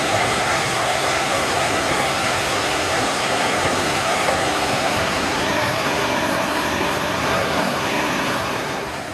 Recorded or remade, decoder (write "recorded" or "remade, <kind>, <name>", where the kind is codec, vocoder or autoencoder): remade, codec, SNAC